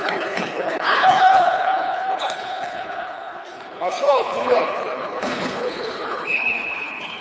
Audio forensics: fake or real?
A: fake